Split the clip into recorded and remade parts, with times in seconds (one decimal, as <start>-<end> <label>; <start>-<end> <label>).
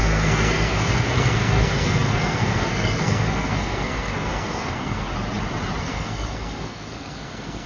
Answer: 0.0-5.1 remade; 5.1-5.8 recorded; 5.8-7.7 remade